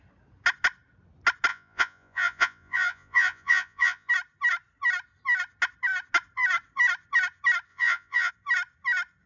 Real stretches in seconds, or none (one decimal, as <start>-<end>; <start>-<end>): 0.0-1.5; 4.1-7.7; 8.3-9.3